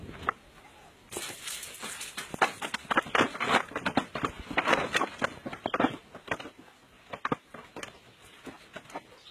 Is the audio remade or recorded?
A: recorded